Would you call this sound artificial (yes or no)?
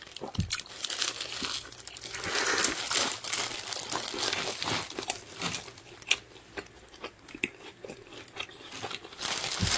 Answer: no